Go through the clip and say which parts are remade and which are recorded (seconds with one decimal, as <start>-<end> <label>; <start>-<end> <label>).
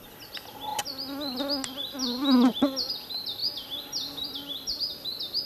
0.0-5.5 recorded